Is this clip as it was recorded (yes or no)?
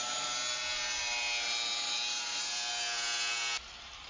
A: yes